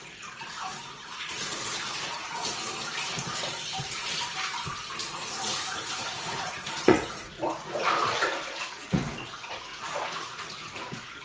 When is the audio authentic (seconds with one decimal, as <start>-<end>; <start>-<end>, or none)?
2.6-5.1